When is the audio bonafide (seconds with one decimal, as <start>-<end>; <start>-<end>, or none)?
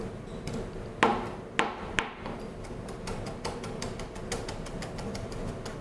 0.0-5.8